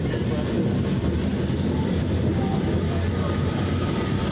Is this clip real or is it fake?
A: real